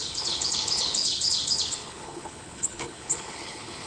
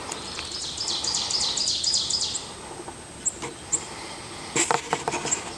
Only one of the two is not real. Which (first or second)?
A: first